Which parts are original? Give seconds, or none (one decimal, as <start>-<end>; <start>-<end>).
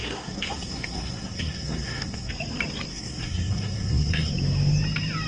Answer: 2.3-2.9; 4.3-5.3